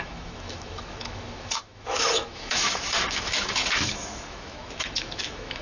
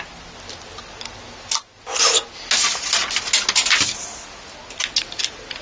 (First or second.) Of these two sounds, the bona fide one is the second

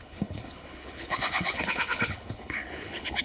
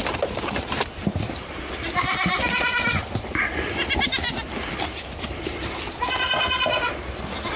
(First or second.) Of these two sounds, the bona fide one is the second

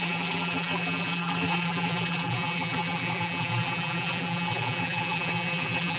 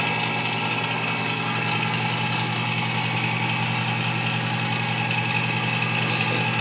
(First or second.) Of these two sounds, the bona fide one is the second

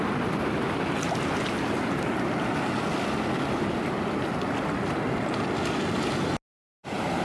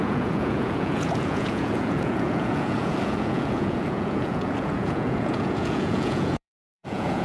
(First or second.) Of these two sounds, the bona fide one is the first